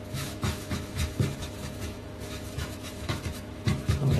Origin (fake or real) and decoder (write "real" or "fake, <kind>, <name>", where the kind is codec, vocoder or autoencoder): fake, autoencoder, DAC-VAE